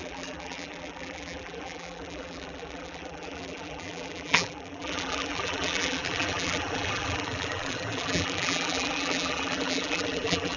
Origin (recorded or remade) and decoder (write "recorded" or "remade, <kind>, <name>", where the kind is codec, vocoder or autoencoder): remade, vocoder, BigVGAN v2